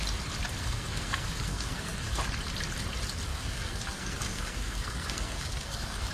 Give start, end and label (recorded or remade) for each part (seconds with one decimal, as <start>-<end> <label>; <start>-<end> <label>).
0.0-0.6 recorded; 0.6-2.2 remade; 2.2-3.3 recorded; 3.3-6.1 remade